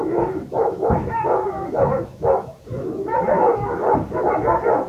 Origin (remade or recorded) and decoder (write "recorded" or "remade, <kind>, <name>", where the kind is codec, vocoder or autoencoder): remade, autoencoder, DAC-VAE